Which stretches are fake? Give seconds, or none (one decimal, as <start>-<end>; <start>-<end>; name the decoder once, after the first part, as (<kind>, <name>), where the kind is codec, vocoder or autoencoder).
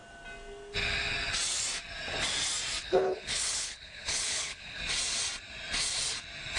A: 2.8-4.8 (codec, HILCodec)